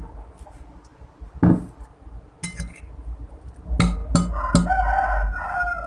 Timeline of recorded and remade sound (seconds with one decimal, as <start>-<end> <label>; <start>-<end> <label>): 0.0-5.9 recorded